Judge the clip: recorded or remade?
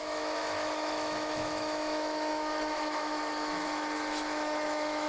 remade